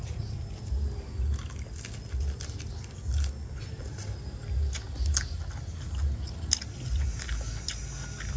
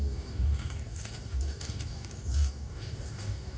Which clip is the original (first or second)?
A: first